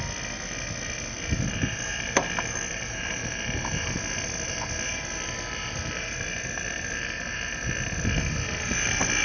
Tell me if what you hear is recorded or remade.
recorded